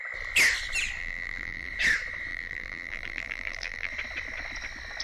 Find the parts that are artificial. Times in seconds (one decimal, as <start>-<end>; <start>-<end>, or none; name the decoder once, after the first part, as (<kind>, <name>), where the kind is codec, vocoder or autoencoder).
1.0-1.7 (vocoder, BigVGAN v2); 2.3-3.9